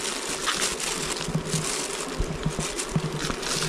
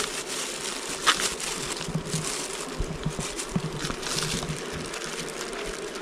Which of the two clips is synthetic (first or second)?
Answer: second